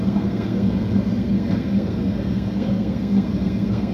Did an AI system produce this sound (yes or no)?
yes